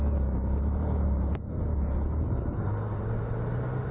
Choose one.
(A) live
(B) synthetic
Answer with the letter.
A